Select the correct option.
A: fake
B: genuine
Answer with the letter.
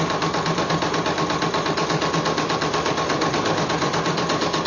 B